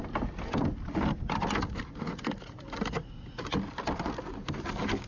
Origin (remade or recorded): recorded